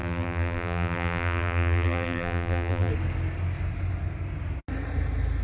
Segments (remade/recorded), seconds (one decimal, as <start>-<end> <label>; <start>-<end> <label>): 0.0-2.9 remade; 2.9-5.4 recorded